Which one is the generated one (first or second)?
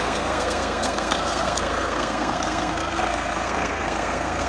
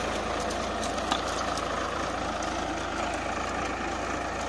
first